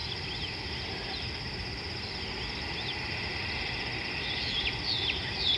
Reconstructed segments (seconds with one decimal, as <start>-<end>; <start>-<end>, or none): none